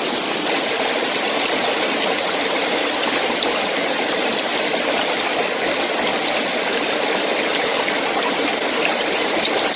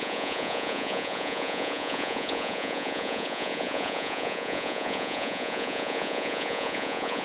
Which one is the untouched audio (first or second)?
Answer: first